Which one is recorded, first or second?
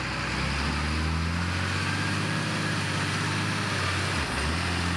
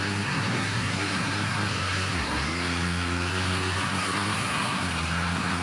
first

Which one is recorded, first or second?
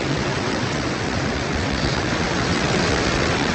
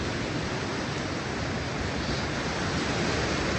second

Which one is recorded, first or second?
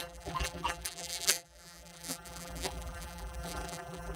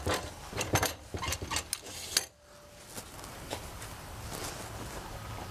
second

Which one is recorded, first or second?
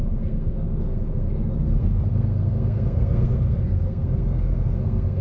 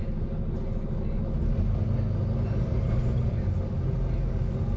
second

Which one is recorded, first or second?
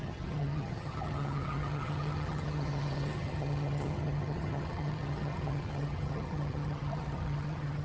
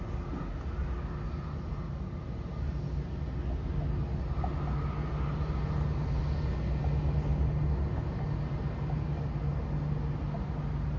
second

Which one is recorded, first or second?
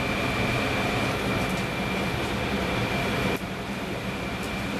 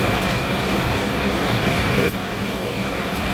first